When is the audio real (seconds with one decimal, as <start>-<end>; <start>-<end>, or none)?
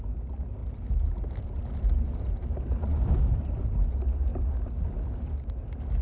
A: 0.0-6.0